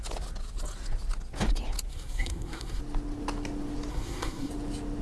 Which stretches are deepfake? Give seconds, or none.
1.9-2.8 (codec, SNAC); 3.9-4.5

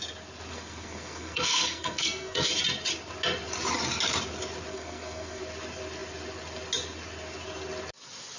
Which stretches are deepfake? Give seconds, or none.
0.5-2.5 (codec, SNAC); 4.7-5.4

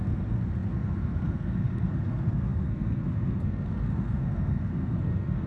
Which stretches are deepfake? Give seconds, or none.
0.0-5.5 (codec, SNAC)